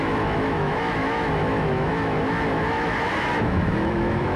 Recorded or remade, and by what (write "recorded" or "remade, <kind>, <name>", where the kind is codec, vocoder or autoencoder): remade, autoencoder, DAC-VAE